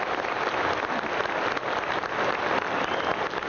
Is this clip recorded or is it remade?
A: recorded